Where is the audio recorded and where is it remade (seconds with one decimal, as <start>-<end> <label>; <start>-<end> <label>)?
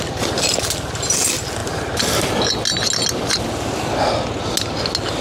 0.0-5.2 recorded